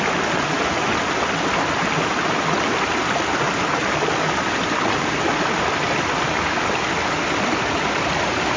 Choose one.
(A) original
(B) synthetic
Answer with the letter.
A